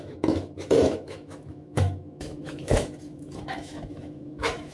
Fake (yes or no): yes